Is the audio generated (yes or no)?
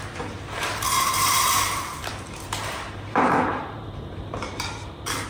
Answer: yes